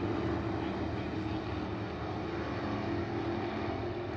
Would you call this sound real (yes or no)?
yes